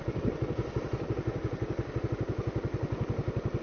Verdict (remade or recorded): recorded